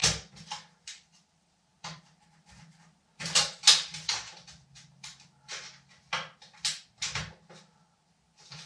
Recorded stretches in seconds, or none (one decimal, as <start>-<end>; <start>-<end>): 5.1-7.6

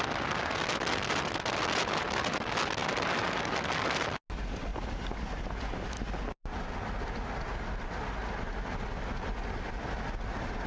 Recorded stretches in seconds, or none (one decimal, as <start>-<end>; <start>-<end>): 0.0-10.7

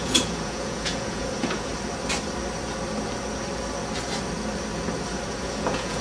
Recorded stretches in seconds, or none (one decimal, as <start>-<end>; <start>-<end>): 1.7-5.3

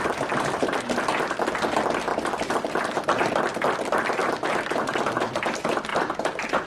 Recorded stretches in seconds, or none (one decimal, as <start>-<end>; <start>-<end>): 5.9-6.7

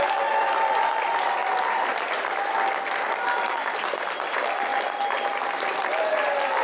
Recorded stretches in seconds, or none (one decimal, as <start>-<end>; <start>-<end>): 0.0-1.4; 2.4-4.7; 6.0-6.6

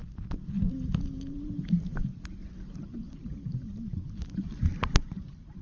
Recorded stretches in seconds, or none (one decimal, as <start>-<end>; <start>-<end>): 1.8-5.6

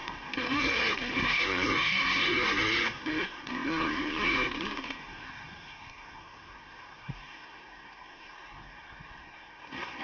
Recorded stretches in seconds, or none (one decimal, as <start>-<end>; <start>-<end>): none

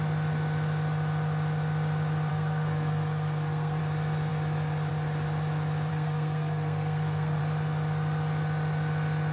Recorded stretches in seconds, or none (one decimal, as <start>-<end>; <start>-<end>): 0.0-2.3; 3.8-5.9; 7.4-9.3